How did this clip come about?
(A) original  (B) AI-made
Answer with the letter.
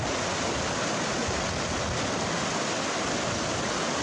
A